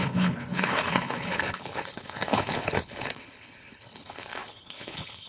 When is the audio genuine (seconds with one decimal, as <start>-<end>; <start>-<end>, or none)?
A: none